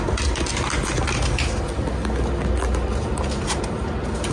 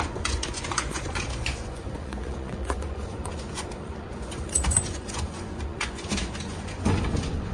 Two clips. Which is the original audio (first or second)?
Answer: first